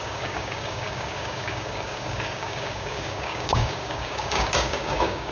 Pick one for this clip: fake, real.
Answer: fake